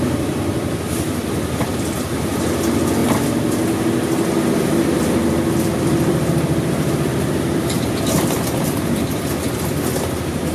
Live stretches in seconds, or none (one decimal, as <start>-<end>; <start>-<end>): 3.0-5.5